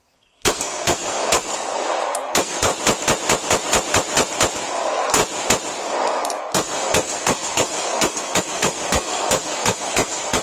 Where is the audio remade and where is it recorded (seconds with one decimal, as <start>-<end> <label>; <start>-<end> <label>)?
0.0-2.7 remade; 2.7-4.7 recorded; 4.7-5.2 remade; 5.2-5.9 recorded; 5.9-10.4 remade

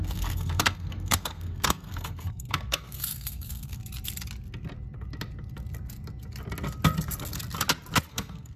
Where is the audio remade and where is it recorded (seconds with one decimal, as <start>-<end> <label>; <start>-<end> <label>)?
0.0-3.8 remade; 3.8-8.1 recorded; 8.1-8.6 remade

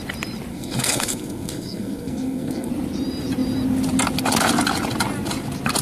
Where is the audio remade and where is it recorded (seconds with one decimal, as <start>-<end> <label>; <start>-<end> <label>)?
0.0-0.5 recorded; 0.5-2.7 remade; 2.7-5.8 recorded

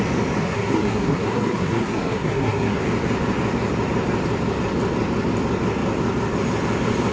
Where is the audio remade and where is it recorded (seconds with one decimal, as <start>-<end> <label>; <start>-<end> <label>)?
0.0-0.4 recorded; 0.4-2.8 remade; 2.8-7.1 recorded

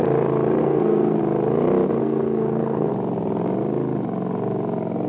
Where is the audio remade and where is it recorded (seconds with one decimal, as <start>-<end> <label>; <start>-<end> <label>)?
0.0-0.6 recorded; 0.6-1.2 remade; 1.2-2.0 recorded; 2.0-2.9 remade; 2.9-5.1 recorded